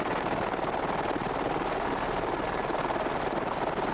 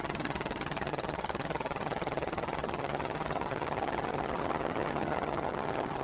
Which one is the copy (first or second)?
second